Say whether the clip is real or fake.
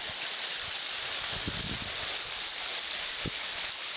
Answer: real